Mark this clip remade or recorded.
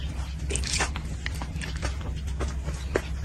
recorded